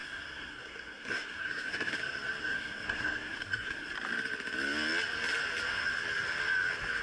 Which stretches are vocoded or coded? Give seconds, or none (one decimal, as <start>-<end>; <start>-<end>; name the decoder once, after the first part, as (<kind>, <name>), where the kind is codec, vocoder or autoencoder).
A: 0.0-1.9 (codec, SNAC); 2.4-3.9

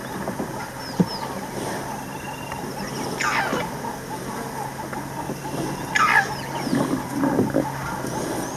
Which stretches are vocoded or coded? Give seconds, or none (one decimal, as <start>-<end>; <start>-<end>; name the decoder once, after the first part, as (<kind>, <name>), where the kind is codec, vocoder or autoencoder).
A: none

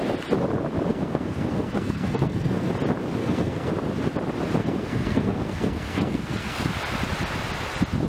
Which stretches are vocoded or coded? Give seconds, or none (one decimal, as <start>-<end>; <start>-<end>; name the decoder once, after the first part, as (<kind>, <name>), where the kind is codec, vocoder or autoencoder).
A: 0.9-2.7 (codec, SNAC); 3.2-3.7; 4.6-6.7

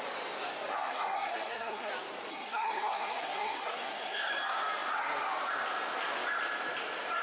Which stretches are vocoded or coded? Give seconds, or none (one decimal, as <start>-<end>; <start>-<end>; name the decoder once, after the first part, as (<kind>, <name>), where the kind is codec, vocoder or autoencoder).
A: 0.7-1.9 (codec, SNAC); 2.3-4.3

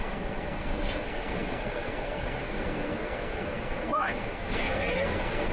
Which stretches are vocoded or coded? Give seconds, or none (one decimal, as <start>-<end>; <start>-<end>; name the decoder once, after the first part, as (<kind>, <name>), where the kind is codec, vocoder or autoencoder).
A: 0.0-5.5 (codec, SNAC)

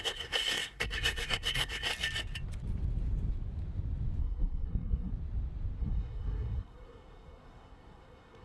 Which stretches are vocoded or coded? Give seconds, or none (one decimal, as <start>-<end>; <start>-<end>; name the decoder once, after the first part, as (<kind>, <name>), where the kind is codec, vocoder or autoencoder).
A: 0.0-1.9 (codec, SNAC); 4.2-5.1; 5.8-8.4

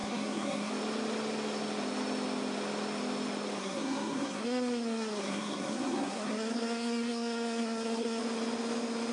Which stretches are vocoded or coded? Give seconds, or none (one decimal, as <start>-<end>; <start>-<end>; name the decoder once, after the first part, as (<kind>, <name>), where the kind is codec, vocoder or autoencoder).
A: 0.0-0.7 (codec, SNAC); 3.6-8.2

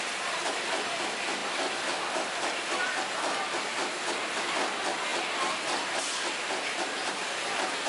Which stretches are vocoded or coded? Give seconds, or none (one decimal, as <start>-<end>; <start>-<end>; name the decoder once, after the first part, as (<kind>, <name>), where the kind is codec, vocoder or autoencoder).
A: none